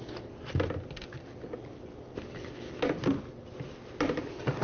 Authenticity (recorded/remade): recorded